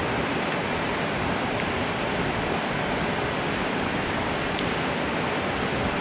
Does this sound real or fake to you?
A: real